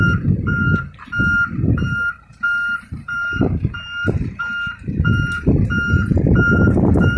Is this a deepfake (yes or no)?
yes